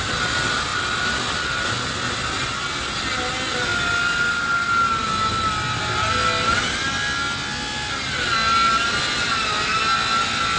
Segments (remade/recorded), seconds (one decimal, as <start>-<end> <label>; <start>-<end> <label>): 0.0-10.6 recorded